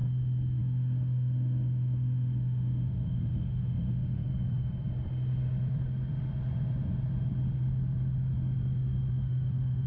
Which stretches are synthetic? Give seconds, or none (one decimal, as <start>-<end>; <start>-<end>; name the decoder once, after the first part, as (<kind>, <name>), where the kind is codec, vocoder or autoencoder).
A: 0.6-4.3 (autoencoder, DAC-VAE); 9.1-9.9